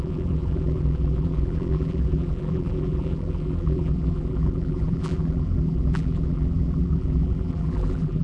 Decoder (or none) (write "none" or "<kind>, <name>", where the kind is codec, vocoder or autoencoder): vocoder, BigVGAN v2